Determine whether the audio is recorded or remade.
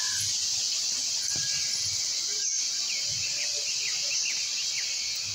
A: recorded